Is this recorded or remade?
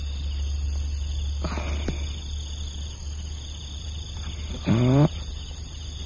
recorded